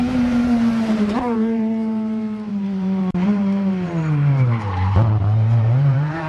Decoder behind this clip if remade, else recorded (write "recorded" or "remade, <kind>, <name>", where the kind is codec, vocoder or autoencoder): remade, vocoder, BigVGAN v2